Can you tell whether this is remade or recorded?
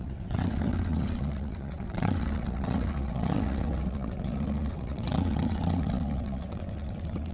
remade